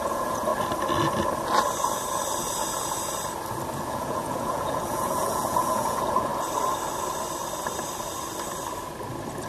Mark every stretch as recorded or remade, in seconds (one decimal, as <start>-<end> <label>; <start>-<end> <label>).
0.0-0.5 remade; 0.5-3.8 recorded; 3.8-6.3 remade; 6.3-9.5 recorded